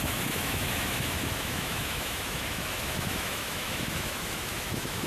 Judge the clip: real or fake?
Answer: fake